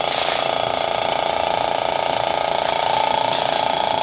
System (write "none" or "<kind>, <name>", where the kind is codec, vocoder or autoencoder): none